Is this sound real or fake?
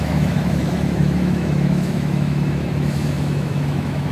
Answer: fake